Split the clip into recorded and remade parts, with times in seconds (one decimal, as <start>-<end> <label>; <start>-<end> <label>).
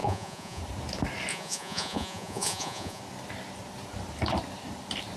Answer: 0.0-0.6 remade; 0.6-1.3 recorded; 1.3-3.0 remade; 3.0-5.2 recorded